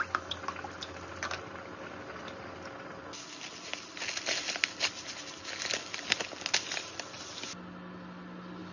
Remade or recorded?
recorded